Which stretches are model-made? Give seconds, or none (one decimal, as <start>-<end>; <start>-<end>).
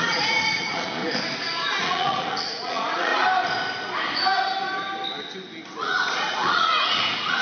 0.0-1.0; 1.8-3.1; 5.8-7.4